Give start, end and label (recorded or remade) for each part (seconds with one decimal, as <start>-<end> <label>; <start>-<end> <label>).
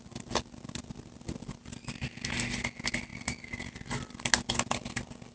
0.0-5.3 recorded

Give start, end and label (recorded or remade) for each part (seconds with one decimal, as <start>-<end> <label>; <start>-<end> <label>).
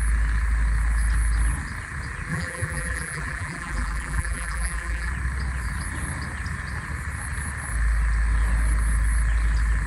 0.0-2.3 recorded; 2.3-5.1 remade; 5.1-9.9 recorded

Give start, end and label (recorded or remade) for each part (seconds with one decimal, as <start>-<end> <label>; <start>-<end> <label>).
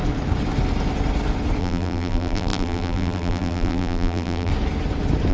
0.0-1.6 recorded; 1.6-4.5 remade; 4.5-5.3 recorded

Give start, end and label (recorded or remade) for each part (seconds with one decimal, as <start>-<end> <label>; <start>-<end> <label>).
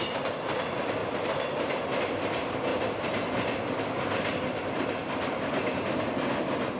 0.0-1.0 recorded; 1.0-2.0 remade; 2.0-2.7 recorded; 2.7-6.3 remade; 6.3-6.8 recorded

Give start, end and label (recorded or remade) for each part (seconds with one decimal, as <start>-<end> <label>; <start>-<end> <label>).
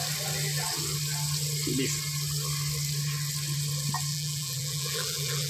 0.0-4.1 recorded; 4.1-5.5 remade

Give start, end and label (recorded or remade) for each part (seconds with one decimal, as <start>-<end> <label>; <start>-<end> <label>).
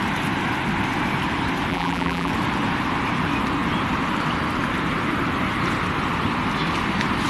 0.0-1.7 recorded; 1.7-2.3 remade; 2.3-7.3 recorded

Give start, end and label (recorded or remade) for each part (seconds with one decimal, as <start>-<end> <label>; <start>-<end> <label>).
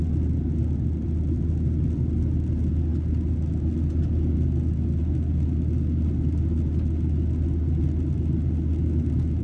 0.0-0.6 recorded; 0.6-2.2 remade; 2.2-9.4 recorded